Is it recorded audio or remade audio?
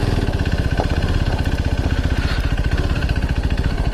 recorded